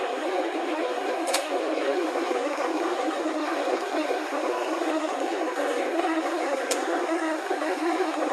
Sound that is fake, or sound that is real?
fake